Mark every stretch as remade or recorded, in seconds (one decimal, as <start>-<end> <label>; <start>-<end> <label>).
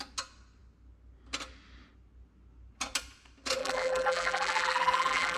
0.0-3.6 recorded; 3.6-5.4 remade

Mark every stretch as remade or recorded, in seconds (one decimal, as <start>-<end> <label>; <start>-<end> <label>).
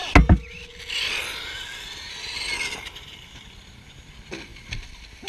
0.0-5.3 recorded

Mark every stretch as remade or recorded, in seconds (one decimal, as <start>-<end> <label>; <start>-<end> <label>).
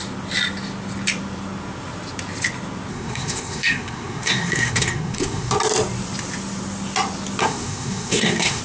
0.0-2.9 recorded; 2.9-5.5 remade; 5.5-7.4 recorded; 7.4-8.6 remade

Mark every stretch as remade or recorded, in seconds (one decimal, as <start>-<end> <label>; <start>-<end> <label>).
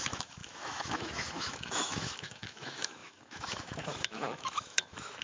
0.0-5.2 remade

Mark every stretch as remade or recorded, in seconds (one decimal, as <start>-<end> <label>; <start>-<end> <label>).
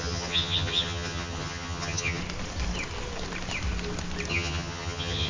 0.0-2.2 remade; 2.2-4.3 recorded; 4.3-5.3 remade